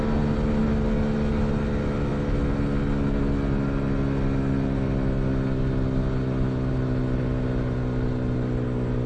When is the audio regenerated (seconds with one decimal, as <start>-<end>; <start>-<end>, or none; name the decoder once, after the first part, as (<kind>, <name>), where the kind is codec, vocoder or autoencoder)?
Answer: none